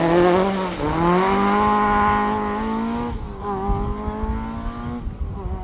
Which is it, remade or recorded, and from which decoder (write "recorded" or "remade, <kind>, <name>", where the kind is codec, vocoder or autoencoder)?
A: recorded